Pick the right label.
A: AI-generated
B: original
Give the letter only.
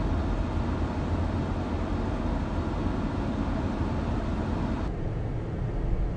B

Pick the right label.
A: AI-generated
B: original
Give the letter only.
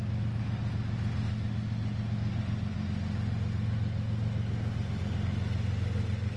B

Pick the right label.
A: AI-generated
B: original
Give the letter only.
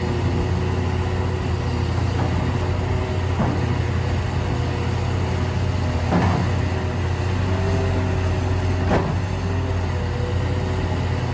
B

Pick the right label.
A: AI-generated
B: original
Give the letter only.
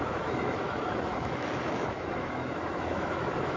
A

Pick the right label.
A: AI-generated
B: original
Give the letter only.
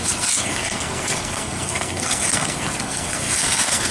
A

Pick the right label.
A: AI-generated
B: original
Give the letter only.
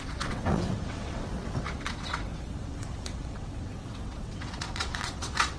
A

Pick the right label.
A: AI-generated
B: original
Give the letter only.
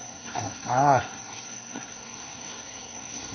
A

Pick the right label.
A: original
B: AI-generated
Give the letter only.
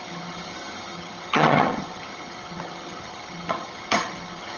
B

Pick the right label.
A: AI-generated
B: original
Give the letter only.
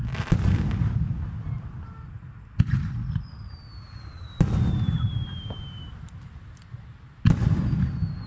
B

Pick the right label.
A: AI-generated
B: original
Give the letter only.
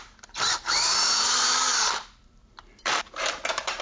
A